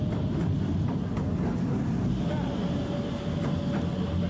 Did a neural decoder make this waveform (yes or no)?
no